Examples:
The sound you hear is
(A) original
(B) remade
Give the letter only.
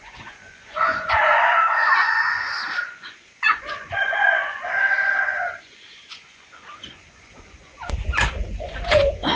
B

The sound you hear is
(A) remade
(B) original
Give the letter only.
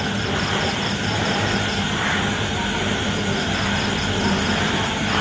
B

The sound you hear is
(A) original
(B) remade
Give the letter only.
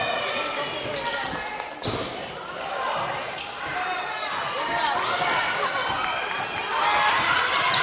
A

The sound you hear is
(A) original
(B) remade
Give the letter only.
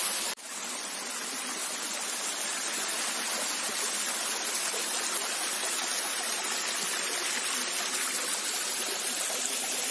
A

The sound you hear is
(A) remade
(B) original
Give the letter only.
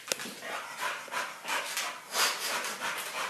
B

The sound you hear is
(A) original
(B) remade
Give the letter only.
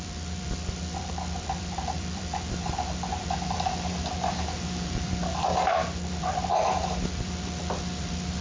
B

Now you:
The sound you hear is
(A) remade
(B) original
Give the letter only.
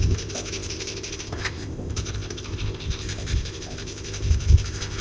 A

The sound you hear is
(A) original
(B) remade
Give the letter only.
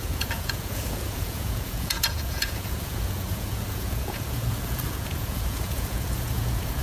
B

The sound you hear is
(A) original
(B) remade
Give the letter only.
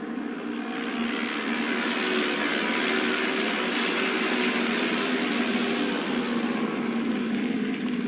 A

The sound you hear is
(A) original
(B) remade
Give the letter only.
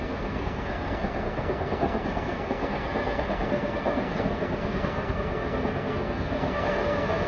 B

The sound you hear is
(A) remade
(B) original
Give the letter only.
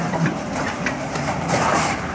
A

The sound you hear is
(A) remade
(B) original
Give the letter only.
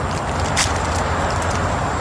B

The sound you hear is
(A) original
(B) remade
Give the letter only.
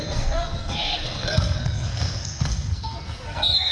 B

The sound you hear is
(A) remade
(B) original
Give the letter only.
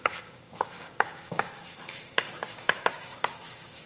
A